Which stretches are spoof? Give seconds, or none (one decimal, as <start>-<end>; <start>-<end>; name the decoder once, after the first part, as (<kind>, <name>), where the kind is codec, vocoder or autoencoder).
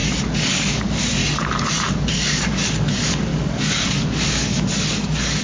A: 0.5-1.2 (codec, DAC); 2.1-5.4